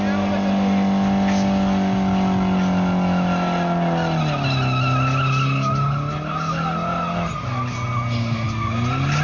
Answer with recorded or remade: recorded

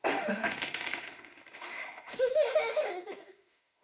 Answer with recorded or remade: remade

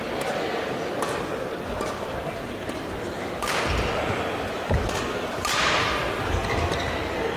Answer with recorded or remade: recorded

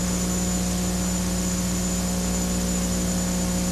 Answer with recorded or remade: recorded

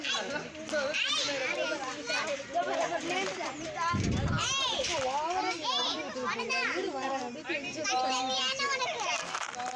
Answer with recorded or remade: recorded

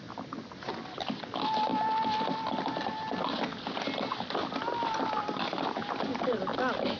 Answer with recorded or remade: recorded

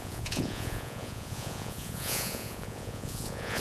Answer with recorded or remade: remade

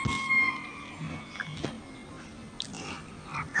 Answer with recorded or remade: recorded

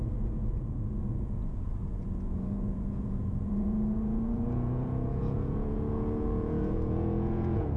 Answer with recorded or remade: remade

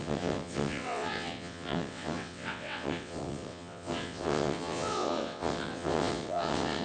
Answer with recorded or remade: remade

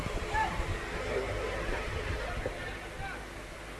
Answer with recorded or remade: recorded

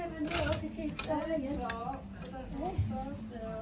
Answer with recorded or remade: recorded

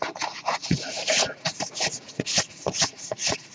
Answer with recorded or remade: remade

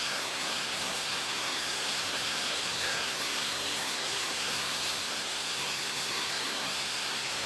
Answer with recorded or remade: remade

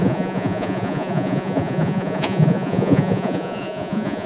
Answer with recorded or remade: remade